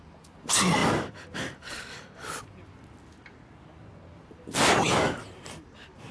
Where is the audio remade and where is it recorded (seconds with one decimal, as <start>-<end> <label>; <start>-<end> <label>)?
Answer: 0.0-6.1 recorded